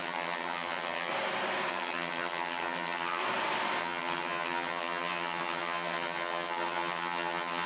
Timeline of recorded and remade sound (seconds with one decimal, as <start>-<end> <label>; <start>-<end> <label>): 0.0-1.1 remade; 1.1-1.7 recorded; 1.7-3.2 remade; 3.2-3.8 recorded; 3.8-7.7 remade